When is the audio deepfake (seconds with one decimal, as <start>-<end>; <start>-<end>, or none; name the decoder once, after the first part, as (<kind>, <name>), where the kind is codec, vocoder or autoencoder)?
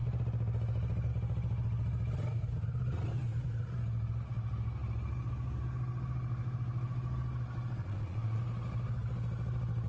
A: 7.8-8.4 (vocoder, Vocos)